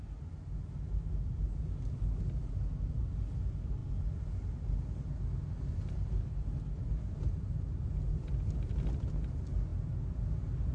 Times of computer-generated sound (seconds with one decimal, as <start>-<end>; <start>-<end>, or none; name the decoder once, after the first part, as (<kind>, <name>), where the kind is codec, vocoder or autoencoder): none

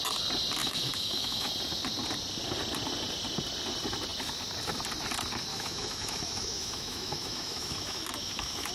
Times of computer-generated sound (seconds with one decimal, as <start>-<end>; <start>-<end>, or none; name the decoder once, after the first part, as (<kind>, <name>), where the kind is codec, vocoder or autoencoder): 0.6-1.5 (autoencoder, DAC-VAE); 5.5-8.7

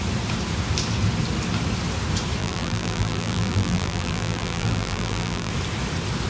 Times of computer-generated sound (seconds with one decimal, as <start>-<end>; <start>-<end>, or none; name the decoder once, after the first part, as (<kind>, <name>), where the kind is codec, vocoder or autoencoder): 2.4-5.5 (vocoder, BigVGAN v2)

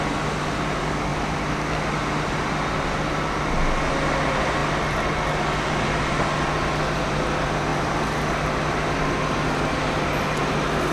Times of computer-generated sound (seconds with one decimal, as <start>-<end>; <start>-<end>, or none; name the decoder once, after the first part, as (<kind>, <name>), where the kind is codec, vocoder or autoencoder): none

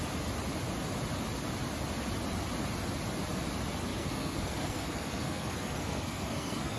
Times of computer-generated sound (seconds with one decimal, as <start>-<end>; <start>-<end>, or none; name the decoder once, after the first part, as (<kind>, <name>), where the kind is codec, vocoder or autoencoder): 3.9-6.8 (codec, SNAC)

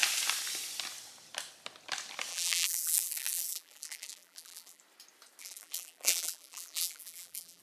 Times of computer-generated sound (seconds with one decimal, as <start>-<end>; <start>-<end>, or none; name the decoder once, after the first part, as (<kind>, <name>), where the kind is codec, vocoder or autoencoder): 2.3-4.8 (vocoder, BigVGAN v2); 5.4-7.6